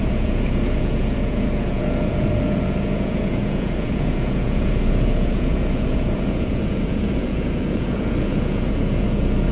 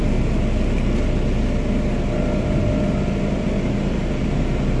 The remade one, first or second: first